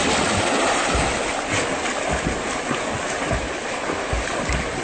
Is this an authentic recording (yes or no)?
yes